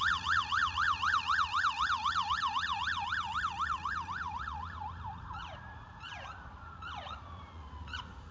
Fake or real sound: fake